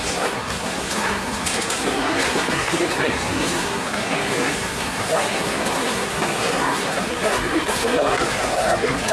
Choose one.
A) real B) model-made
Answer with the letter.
B